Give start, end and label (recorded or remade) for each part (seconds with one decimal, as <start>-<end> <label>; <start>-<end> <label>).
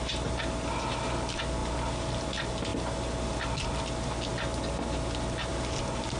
0.0-2.7 recorded; 2.7-3.8 remade; 3.8-6.2 recorded